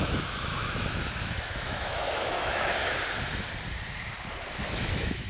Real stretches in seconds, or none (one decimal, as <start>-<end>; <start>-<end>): 2.9-4.8